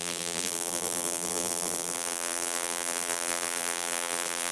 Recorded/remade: remade